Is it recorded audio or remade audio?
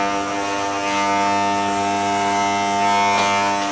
recorded